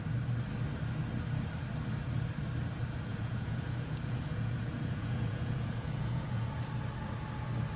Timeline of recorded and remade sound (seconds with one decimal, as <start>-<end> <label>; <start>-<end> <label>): 0.0-3.1 recorded; 3.1-6.5 remade; 6.5-7.8 recorded